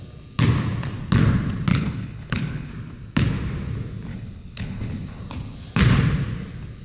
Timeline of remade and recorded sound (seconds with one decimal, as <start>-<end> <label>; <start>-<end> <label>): 0.0-1.7 recorded; 1.7-2.7 remade; 2.7-4.1 recorded; 4.1-5.2 remade; 5.2-6.8 recorded